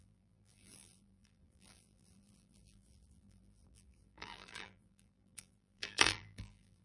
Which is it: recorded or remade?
remade